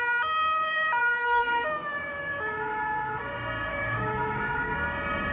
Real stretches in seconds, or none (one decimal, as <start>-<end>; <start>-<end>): 0.0-1.0; 3.2-3.7; 4.7-5.3